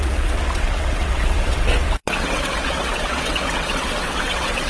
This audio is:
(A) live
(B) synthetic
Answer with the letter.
B